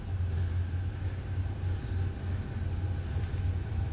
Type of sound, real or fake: real